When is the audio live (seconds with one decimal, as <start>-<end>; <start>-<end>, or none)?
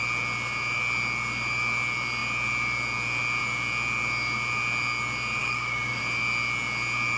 0.0-5.4; 6.0-7.2